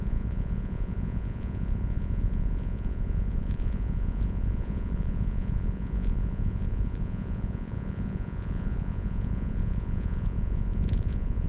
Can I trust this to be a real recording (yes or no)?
no